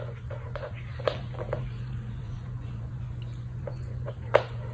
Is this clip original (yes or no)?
no